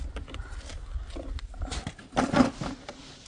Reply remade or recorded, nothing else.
recorded